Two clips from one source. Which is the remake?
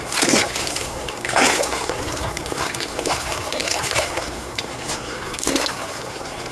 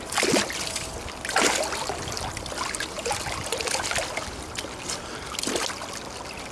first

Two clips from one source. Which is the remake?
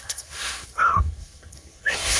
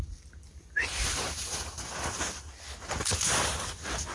first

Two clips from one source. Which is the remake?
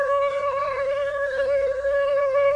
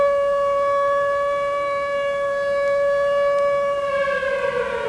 first